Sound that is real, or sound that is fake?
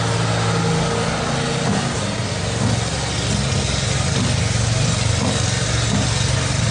real